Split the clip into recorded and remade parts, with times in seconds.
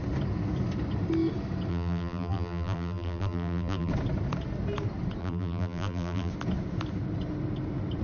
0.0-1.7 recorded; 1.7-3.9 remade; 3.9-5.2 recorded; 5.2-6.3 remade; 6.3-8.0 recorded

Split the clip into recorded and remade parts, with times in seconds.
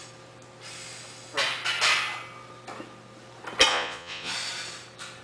0.0-3.7 recorded; 3.7-4.3 remade; 4.3-5.2 recorded